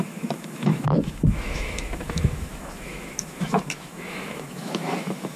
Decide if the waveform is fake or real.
fake